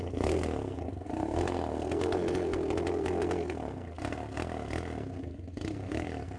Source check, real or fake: fake